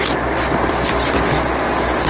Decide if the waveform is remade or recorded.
recorded